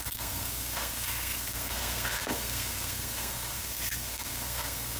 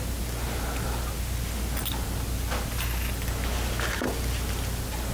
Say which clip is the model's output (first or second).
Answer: first